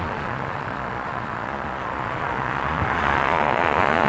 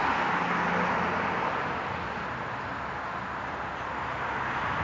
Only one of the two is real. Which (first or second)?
second